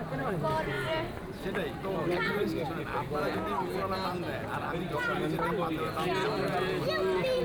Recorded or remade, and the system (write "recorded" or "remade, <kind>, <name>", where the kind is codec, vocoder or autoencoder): recorded